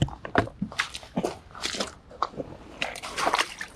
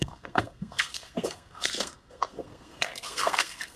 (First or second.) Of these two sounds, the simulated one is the second